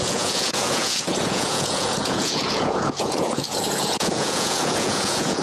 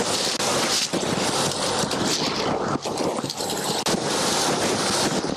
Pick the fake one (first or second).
first